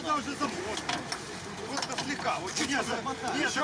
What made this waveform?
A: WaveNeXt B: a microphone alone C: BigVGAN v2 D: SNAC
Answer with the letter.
B